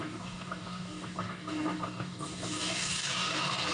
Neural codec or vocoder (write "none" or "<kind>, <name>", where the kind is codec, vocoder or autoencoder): codec, DAC